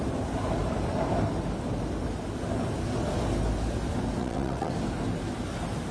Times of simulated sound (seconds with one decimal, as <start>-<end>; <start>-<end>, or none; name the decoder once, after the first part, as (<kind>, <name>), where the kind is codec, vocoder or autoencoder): 4.2-4.7 (vocoder, WaveNeXt)

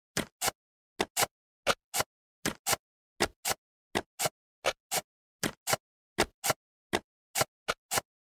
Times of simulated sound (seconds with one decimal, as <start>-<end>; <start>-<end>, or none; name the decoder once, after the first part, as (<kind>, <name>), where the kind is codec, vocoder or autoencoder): none